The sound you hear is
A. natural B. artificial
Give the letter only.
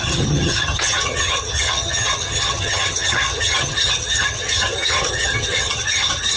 B